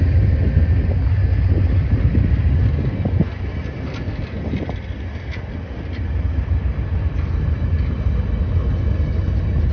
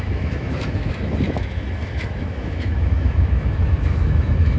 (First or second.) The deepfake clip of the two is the second